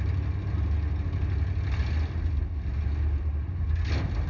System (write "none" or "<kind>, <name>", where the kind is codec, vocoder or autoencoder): none